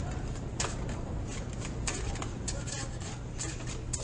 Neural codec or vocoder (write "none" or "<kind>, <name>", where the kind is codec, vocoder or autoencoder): none